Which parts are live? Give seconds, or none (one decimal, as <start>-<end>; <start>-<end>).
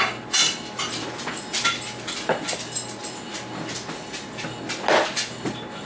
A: 0.0-5.8